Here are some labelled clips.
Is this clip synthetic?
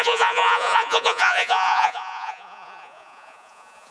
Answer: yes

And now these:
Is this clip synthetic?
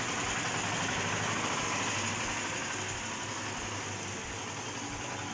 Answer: no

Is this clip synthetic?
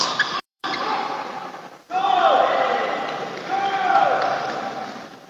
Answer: yes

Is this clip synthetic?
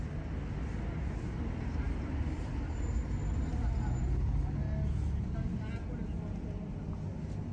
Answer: no